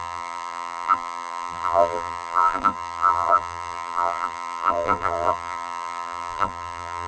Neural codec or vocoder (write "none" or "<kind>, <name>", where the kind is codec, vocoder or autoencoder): vocoder, BigVGAN v2